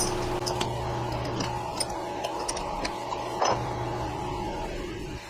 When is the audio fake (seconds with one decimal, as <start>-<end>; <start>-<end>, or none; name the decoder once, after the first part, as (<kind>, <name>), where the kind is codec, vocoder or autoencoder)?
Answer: none